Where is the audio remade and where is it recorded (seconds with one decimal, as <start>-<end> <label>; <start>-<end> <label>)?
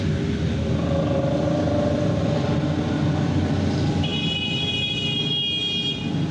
0.0-6.3 recorded